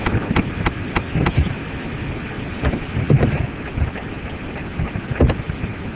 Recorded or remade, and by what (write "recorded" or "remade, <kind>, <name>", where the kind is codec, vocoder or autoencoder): remade, vocoder, BigVGAN v2